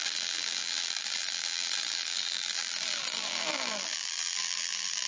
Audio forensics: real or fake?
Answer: fake